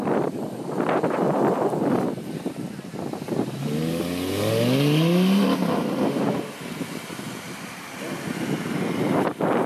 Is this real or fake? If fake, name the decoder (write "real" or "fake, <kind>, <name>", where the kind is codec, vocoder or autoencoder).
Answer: real